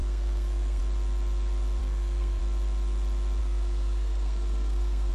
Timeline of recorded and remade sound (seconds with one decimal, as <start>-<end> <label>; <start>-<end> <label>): 0.0-0.8 remade; 0.8-1.8 recorded; 1.8-2.4 remade; 2.4-3.4 recorded; 3.4-5.1 remade